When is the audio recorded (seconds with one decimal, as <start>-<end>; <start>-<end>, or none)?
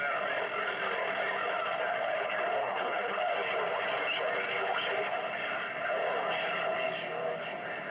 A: 0.0-2.6; 3.2-7.9